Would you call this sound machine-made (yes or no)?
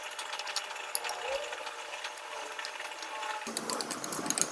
no